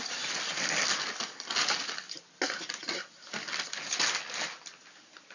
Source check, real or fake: real